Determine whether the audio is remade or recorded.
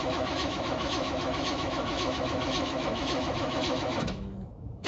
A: remade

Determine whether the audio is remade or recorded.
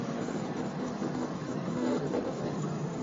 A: remade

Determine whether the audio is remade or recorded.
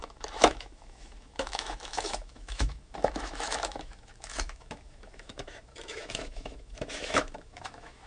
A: remade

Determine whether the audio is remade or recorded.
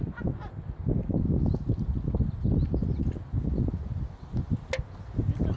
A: recorded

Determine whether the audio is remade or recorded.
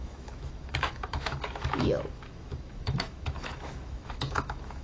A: remade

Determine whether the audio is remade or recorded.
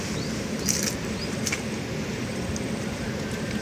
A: recorded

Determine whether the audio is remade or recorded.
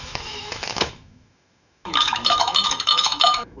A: remade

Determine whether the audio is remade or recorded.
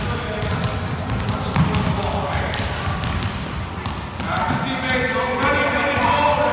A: recorded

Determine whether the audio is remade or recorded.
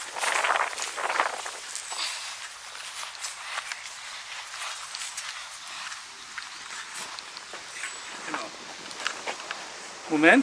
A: recorded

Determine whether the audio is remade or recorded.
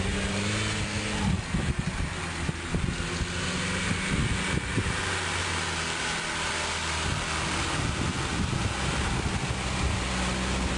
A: recorded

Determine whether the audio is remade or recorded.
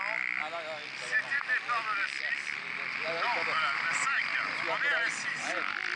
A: recorded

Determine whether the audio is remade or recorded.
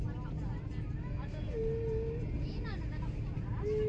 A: recorded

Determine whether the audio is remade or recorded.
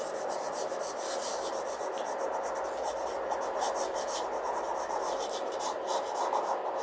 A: recorded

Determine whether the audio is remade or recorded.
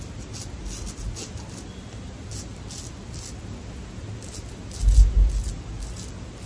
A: recorded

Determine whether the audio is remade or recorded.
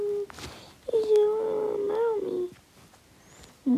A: recorded